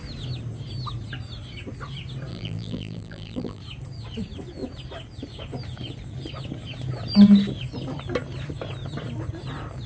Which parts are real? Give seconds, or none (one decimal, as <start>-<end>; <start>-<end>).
0.0-2.3; 3.6-9.9